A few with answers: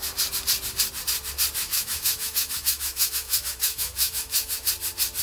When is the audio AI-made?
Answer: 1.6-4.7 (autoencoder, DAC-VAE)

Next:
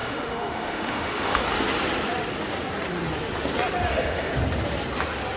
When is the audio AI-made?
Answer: 0.0-1.4 (autoencoder, DAC-VAE); 3.9-4.3

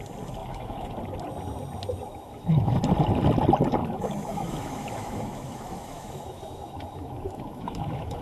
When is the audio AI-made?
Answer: 0.4-1.0 (autoencoder, DAC-VAE); 2.1-2.8; 3.8-8.2